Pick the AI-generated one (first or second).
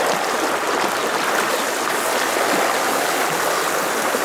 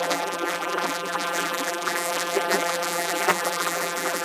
second